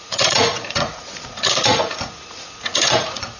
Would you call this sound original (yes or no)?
no